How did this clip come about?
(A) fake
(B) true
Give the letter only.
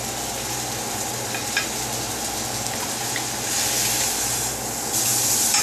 B